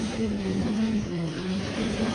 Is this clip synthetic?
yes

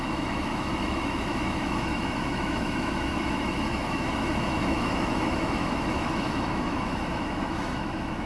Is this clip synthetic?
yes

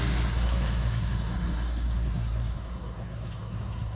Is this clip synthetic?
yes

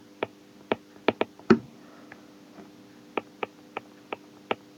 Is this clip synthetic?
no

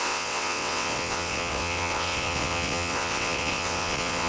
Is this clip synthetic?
yes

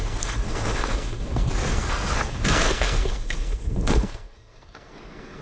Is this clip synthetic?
yes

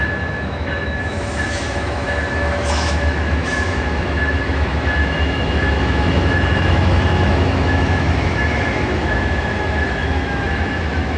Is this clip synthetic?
yes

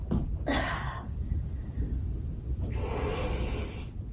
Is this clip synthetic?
yes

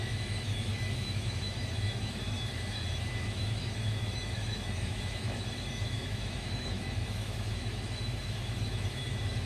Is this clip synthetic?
yes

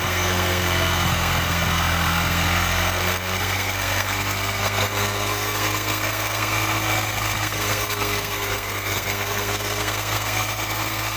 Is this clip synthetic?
yes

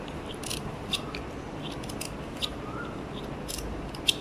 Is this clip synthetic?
no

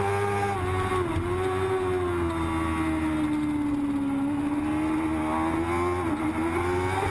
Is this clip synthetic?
no